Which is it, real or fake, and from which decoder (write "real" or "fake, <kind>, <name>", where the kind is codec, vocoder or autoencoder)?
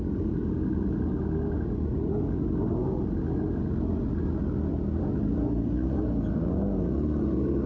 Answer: real